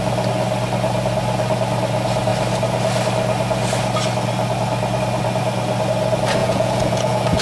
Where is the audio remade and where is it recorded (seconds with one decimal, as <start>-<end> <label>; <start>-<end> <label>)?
0.0-6.4 recorded; 6.4-7.4 remade